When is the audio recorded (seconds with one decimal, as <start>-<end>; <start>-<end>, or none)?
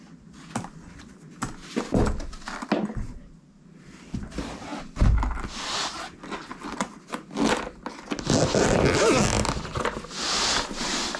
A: 0.0-11.2